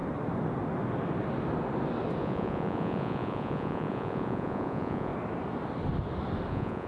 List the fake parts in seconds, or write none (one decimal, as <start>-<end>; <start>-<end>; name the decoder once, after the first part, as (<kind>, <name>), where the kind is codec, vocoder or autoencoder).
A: 2.2-5.1 (vocoder, Vocos); 6.5-6.9